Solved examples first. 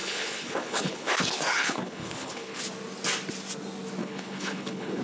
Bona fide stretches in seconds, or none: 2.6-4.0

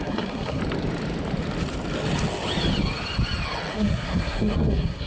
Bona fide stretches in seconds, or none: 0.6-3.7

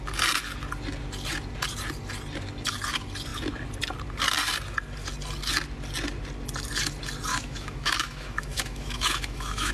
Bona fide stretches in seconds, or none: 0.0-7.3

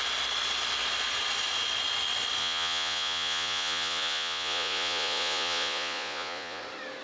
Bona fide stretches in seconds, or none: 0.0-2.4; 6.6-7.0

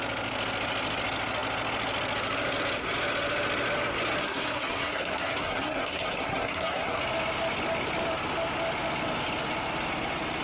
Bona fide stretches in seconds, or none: 0.0-4.2; 7.0-10.4

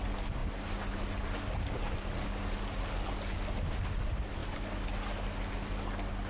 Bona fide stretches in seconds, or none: 0.0-6.3

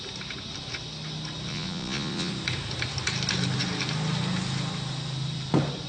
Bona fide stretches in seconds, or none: 0.0-1.5; 2.3-5.9

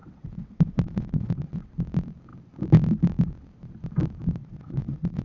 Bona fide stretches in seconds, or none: 1.7-4.4